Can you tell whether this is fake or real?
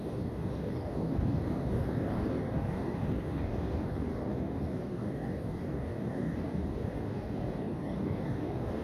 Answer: fake